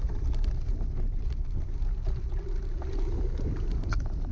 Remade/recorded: recorded